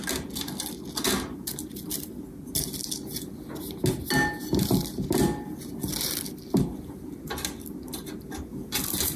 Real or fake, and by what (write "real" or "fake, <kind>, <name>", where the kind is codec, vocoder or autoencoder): real